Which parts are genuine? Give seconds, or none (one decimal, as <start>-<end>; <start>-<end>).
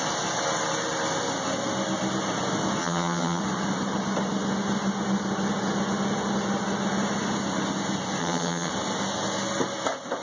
0.0-2.8; 3.4-8.2; 8.7-10.2